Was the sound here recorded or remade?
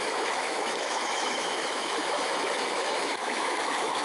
remade